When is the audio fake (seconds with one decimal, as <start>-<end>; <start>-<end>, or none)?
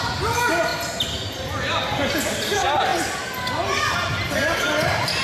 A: none